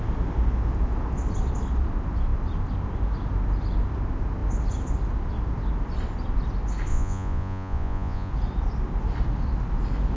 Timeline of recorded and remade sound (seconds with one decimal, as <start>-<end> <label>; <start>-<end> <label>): 0.0-6.9 recorded; 6.9-8.3 remade; 8.3-10.2 recorded